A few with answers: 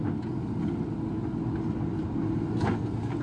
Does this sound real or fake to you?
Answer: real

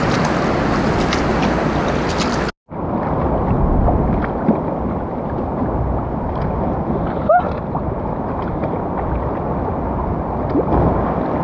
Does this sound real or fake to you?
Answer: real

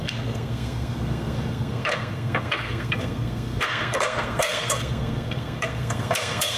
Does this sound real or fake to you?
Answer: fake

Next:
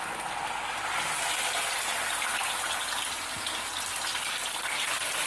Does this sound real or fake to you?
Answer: real